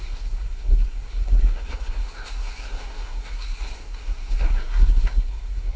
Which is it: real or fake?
fake